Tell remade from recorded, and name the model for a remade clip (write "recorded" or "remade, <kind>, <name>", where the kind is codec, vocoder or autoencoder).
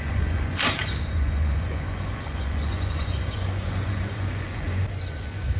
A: remade, vocoder, Vocos